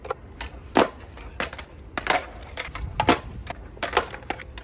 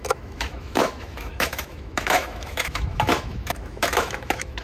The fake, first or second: second